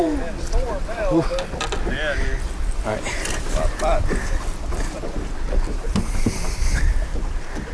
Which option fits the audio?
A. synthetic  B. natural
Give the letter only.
B